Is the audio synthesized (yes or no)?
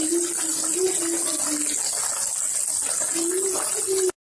no